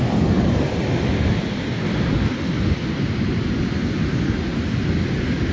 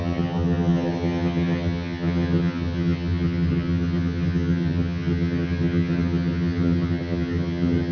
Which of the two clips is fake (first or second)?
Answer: second